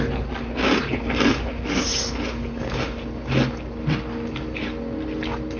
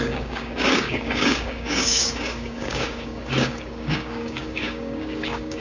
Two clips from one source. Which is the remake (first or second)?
second